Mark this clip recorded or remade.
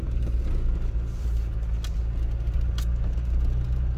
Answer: recorded